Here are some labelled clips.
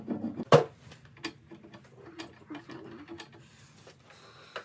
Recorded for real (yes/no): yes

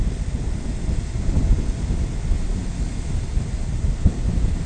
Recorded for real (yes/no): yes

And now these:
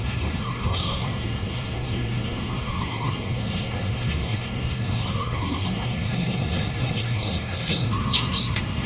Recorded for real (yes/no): no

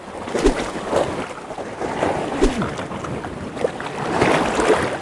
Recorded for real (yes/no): yes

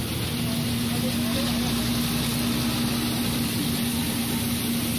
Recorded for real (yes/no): yes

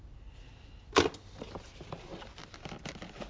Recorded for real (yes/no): yes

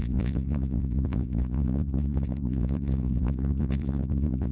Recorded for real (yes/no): no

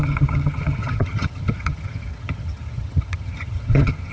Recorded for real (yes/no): no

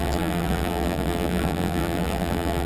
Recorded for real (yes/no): no